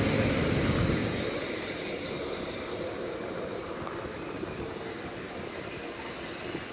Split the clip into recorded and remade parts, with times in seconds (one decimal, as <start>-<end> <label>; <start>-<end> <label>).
0.0-1.0 recorded; 1.0-5.0 remade; 5.0-6.7 recorded